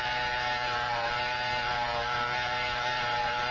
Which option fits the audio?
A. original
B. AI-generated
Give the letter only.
B